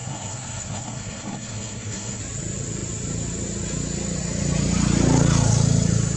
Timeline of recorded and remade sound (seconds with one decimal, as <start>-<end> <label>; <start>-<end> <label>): 0.0-2.2 remade; 2.2-6.2 recorded